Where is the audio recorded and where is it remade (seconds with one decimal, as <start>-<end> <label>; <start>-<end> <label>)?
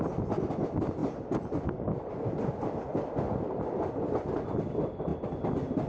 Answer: 0.0-5.9 recorded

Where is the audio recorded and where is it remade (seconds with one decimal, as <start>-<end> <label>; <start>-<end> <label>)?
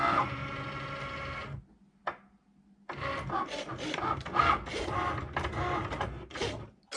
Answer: 0.0-7.0 recorded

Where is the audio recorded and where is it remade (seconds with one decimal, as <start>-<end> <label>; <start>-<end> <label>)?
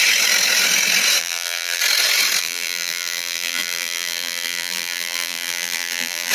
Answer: 0.0-1.2 recorded; 1.2-1.8 remade; 1.8-2.4 recorded; 2.4-6.3 remade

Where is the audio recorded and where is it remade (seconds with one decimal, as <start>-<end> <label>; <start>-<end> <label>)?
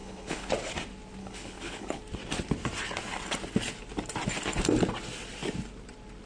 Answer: 0.0-0.5 remade; 0.5-1.2 recorded; 1.2-2.0 remade; 2.0-6.3 recorded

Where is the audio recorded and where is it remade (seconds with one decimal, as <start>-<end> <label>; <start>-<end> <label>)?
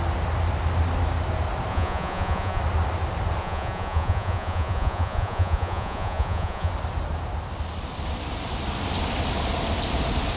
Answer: 0.0-1.7 recorded; 1.7-2.6 remade; 2.6-3.4 recorded; 3.4-6.7 remade; 6.7-10.4 recorded